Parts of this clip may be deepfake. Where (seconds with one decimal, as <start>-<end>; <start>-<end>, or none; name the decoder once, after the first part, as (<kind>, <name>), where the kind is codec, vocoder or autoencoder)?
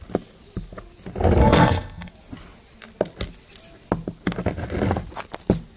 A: 1.4-2.1 (codec, SNAC)